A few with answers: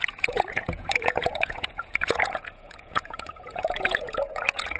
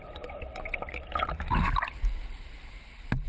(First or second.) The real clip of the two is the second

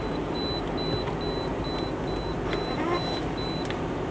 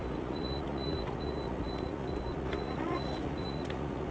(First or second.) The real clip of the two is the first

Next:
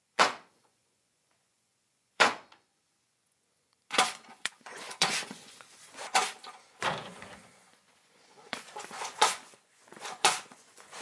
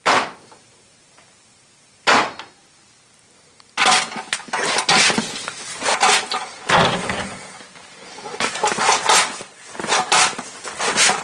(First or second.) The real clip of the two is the second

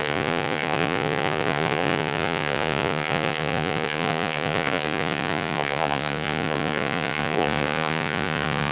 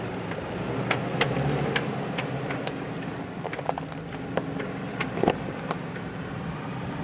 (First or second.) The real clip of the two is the second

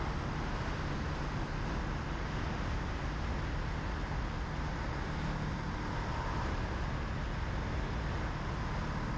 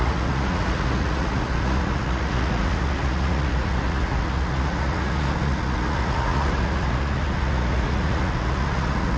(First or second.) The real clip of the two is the first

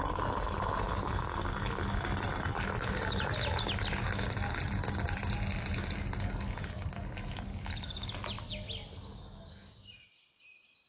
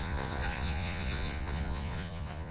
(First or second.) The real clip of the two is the first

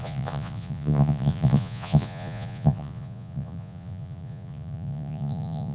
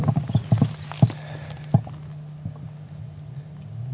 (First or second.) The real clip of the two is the second